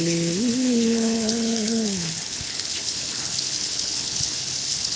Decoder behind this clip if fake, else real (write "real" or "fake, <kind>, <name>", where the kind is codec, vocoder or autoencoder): fake, codec, HILCodec